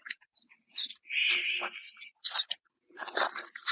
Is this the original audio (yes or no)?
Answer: yes